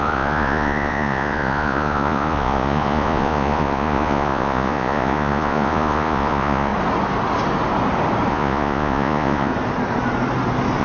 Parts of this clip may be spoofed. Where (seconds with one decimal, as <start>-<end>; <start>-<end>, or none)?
0.0-6.7; 8.3-9.5